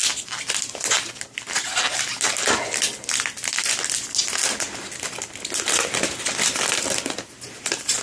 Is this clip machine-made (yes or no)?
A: no